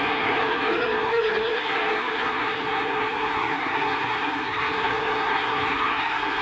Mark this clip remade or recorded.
remade